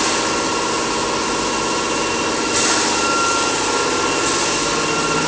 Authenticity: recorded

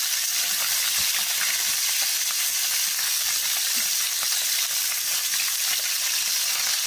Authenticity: recorded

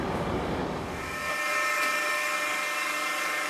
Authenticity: remade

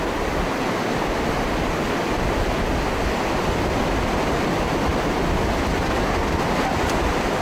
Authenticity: recorded